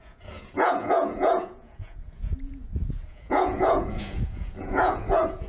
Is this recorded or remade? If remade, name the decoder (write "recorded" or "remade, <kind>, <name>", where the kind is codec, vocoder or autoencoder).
remade, vocoder, Vocos